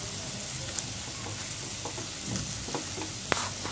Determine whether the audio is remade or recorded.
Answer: recorded